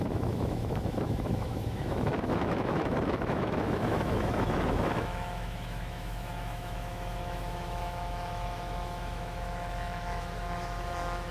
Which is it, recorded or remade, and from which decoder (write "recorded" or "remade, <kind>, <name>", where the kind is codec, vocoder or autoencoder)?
remade, autoencoder, DAC-VAE